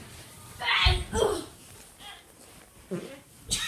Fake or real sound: real